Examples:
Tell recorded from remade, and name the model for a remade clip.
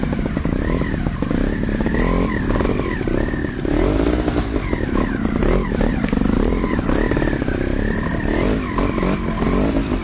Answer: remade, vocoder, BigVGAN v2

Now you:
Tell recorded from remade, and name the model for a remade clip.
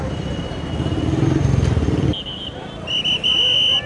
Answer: recorded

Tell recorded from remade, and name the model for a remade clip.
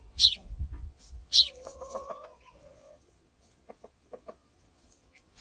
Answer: remade, vocoder, Vocos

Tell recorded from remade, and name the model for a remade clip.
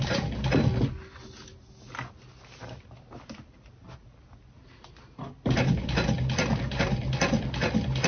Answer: recorded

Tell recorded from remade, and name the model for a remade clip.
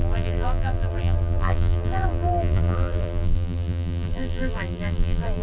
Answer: remade, vocoder, BigVGAN v2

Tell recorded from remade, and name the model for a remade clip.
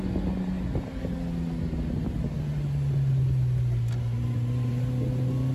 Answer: recorded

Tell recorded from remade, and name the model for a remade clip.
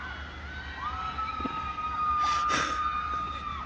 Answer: recorded